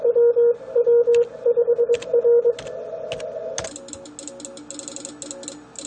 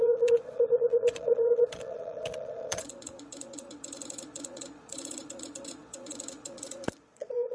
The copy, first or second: second